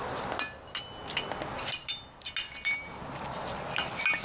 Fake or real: real